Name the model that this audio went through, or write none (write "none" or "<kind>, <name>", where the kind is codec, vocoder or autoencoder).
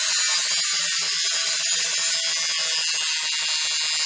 none